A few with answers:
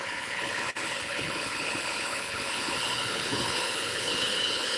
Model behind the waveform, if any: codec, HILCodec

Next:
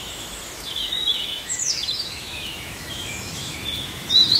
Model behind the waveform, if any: autoencoder, DAC-VAE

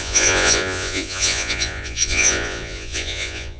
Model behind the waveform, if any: vocoder, Vocos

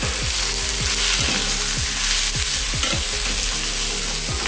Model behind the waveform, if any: none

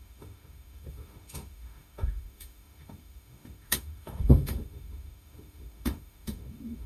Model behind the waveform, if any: autoencoder, DAC-VAE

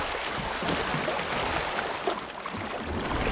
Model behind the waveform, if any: none